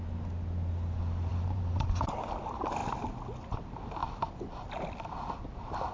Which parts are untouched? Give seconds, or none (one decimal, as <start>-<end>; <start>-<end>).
0.0-1.3; 2.3-5.9